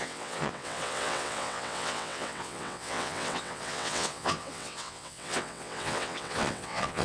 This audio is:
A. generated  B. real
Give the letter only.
A